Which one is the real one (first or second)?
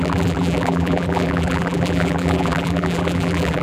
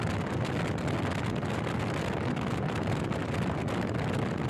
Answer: second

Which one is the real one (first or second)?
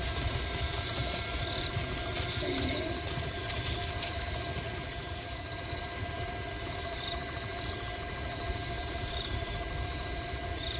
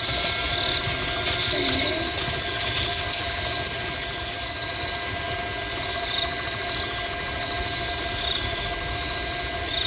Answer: second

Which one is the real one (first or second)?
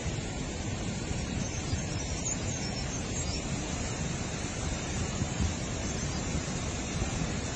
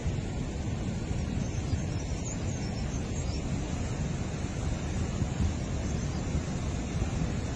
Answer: second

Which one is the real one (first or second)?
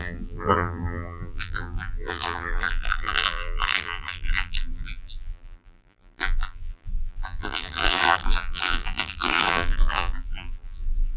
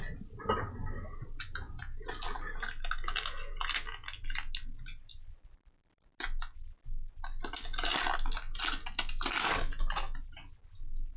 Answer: second